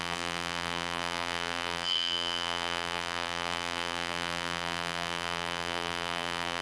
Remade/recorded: remade